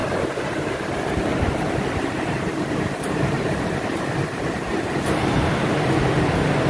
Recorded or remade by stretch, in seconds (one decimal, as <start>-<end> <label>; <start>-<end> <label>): 0.0-0.9 remade; 0.9-1.3 recorded; 1.3-5.3 remade; 5.3-6.7 recorded